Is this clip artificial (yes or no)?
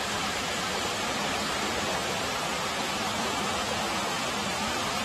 yes